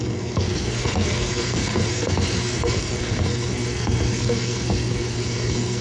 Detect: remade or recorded remade